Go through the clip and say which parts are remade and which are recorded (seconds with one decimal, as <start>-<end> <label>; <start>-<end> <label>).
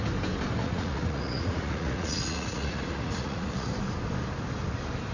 0.0-0.6 recorded; 0.6-3.7 remade; 3.7-5.1 recorded